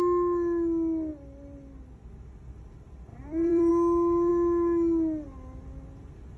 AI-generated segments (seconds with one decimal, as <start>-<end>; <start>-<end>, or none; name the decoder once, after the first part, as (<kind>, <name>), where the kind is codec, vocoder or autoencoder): 3.1-3.7 (vocoder, BigVGAN v2)